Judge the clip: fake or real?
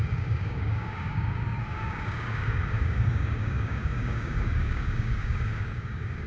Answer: fake